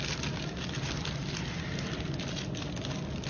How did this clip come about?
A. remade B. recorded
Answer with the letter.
B